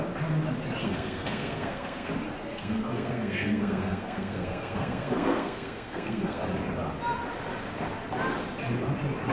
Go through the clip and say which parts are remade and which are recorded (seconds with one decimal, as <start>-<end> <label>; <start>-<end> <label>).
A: 0.0-0.8 recorded; 0.8-2.1 remade; 2.1-2.5 recorded; 2.5-6.4 remade; 6.4-9.3 recorded